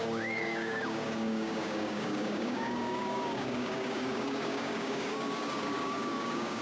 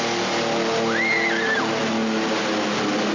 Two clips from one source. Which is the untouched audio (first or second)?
second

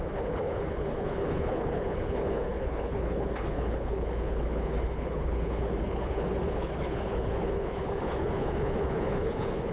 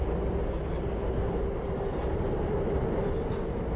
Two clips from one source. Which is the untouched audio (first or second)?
second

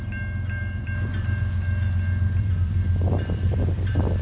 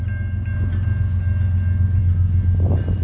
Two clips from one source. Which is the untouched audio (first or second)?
second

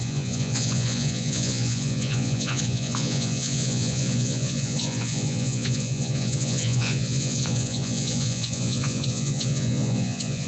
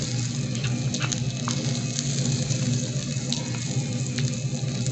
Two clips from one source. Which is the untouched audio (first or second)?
second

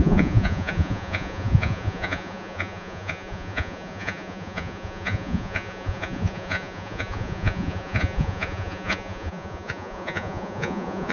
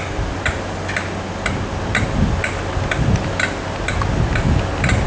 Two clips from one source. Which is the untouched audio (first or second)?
second